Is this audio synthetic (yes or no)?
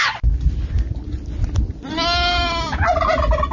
no